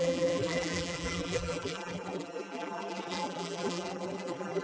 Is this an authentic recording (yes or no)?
no